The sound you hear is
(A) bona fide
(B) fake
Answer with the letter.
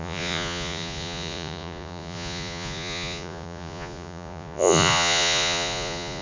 B